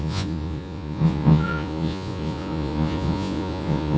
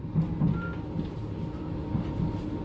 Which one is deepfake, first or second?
first